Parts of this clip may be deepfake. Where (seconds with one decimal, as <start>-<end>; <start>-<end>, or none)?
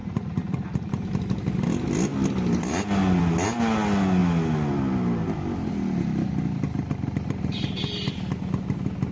0.0-0.9